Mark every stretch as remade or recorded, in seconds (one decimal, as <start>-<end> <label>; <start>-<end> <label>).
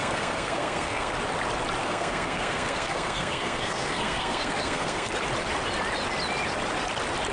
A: 0.0-1.1 remade; 1.1-1.8 recorded; 1.8-5.1 remade; 5.1-7.3 recorded